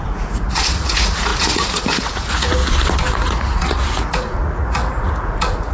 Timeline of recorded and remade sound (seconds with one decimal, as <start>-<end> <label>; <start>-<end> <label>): 0.0-2.6 remade; 2.6-3.1 recorded; 3.1-5.7 remade